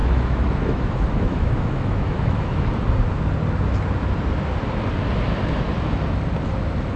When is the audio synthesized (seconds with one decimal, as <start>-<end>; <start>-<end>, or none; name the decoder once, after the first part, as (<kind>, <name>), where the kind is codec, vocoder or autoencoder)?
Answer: 0.0-2.7 (autoencoder, DAC-VAE)